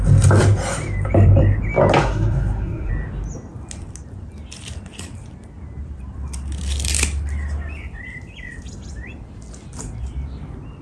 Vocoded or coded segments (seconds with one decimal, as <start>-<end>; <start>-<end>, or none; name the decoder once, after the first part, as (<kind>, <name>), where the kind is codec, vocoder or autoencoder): 2.0-2.9 (codec, SNAC)